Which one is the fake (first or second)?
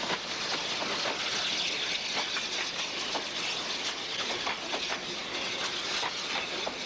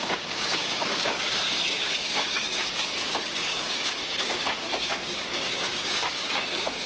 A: second